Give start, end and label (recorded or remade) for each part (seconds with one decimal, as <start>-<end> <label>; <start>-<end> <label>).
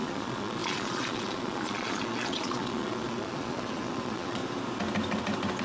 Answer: 0.0-4.4 remade; 4.4-5.6 recorded